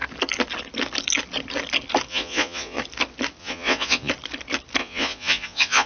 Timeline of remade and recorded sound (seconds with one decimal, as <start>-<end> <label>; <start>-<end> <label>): 0.0-2.1 recorded; 2.1-2.8 remade; 2.8-3.4 recorded; 3.4-4.1 remade; 4.1-4.8 recorded; 4.8-5.9 remade